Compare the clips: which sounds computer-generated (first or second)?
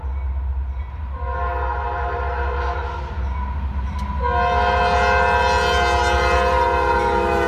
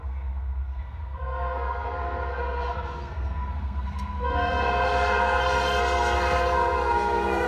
second